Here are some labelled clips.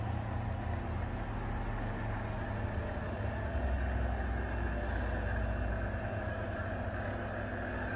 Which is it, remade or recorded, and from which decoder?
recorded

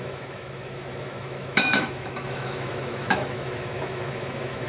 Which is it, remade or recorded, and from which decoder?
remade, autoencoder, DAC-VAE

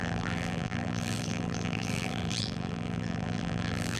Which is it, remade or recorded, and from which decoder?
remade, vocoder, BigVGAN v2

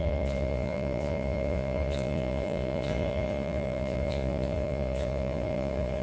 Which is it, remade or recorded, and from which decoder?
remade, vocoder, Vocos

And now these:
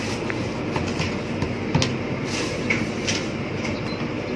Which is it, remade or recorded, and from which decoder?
recorded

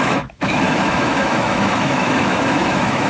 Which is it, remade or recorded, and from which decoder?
remade, autoencoder, DAC-VAE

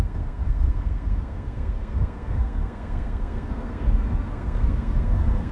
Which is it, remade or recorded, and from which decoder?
remade, codec, SNAC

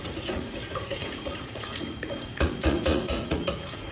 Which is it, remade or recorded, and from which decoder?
remade, vocoder, Vocos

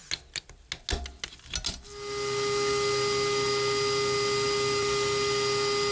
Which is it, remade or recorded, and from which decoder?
recorded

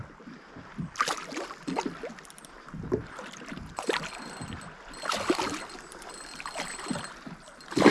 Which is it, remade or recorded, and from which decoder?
recorded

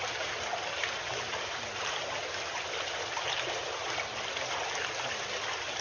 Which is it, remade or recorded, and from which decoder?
recorded